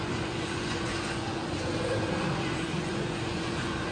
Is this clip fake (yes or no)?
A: yes